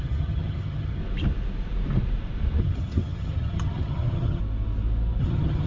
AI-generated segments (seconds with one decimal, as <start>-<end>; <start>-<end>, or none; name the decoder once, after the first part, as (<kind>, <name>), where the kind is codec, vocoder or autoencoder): 0.0-1.0 (vocoder, HiFi-GAN); 2.6-4.4; 5.2-5.7